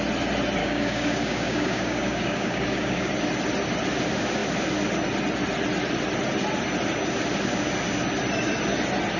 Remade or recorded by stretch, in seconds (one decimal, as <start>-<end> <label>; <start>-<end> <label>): 0.0-0.6 recorded; 0.6-3.1 remade; 3.1-9.2 recorded